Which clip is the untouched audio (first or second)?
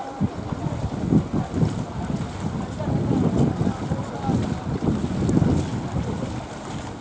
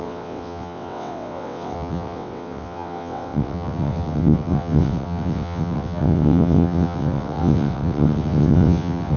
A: first